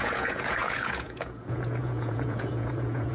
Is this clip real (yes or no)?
no